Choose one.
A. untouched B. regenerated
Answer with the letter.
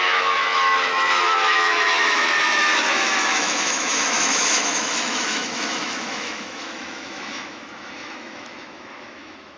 B